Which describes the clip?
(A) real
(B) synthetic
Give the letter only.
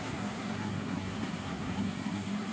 B